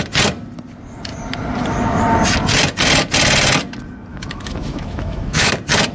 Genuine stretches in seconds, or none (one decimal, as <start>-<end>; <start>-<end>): 0.0-4.1; 5.5-5.9